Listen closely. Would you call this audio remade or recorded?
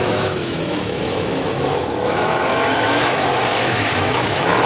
remade